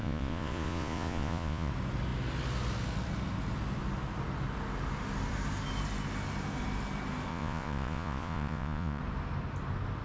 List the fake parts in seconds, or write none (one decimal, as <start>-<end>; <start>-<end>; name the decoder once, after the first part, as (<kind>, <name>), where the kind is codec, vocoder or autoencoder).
0.0-1.7 (vocoder, Vocos); 7.3-9.0